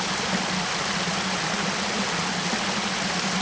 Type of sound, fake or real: real